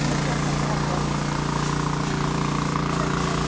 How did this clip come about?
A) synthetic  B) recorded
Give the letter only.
B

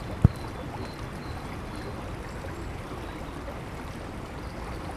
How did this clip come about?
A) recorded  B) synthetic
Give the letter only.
A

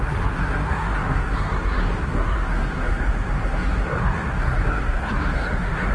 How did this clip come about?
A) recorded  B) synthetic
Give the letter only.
B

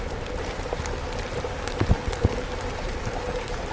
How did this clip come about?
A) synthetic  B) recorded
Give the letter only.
B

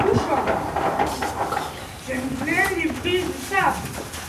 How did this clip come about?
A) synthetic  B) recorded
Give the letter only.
B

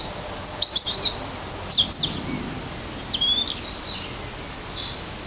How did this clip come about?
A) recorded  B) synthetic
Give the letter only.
A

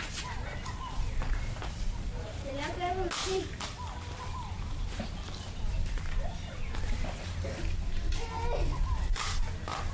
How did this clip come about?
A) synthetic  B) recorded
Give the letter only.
B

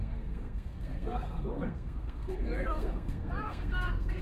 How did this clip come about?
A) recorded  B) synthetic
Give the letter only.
B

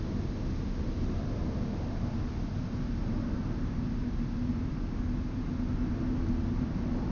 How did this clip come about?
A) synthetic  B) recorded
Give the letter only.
B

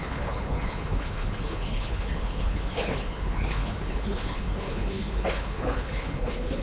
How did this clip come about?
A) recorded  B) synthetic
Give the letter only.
B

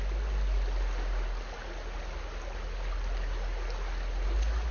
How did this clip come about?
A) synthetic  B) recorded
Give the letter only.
B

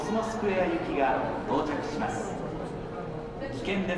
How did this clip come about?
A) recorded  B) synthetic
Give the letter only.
A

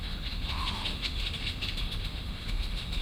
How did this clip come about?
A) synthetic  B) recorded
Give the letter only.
A